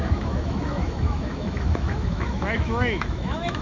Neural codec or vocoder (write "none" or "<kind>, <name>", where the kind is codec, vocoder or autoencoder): autoencoder, DAC-VAE